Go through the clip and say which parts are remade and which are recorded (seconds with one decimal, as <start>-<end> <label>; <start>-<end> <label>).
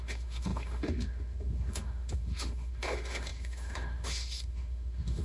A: 0.0-5.2 remade